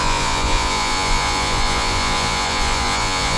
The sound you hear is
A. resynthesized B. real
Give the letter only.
A